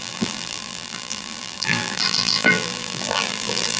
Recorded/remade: remade